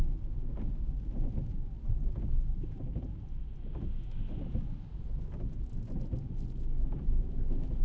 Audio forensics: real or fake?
real